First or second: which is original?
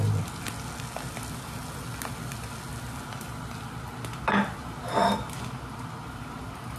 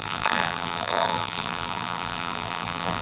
first